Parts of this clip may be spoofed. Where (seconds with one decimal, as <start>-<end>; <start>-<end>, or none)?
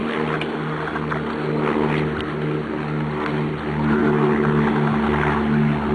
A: none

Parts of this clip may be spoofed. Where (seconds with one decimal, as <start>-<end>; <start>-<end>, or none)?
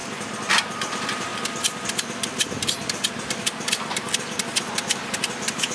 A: 0.6-1.3; 4.7-5.7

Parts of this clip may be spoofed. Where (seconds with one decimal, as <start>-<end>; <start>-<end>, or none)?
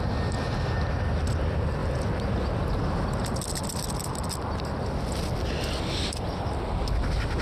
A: none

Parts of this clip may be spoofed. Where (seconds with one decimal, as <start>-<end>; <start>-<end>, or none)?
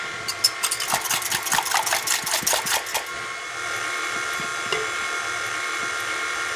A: none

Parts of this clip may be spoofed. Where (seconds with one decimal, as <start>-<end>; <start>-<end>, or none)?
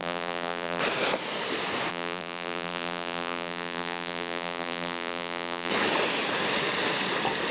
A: 0.0-0.8; 1.9-5.7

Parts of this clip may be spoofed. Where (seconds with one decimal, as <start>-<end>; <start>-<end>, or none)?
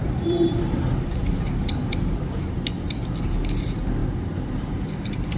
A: 0.0-1.5; 4.0-4.9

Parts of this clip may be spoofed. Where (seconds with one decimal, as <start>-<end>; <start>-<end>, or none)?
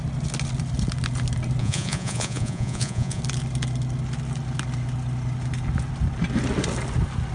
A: 1.6-3.2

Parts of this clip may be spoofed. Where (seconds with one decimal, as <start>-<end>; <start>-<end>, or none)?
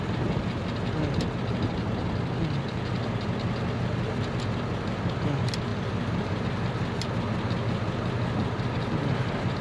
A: 5.7-6.4